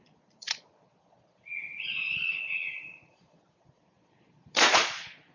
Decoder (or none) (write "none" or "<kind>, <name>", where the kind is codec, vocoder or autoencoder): vocoder, Vocos